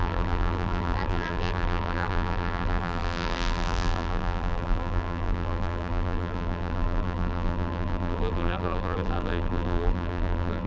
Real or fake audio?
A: fake